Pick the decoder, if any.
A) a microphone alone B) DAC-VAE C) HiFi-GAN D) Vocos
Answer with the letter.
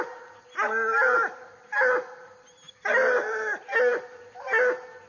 A